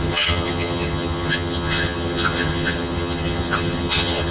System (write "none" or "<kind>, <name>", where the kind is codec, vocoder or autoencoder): vocoder, HiFi-GAN